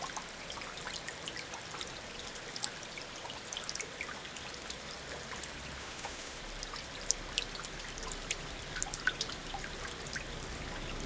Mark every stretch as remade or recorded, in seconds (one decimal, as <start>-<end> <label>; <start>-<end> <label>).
0.0-5.8 recorded; 5.8-6.4 remade; 6.4-11.1 recorded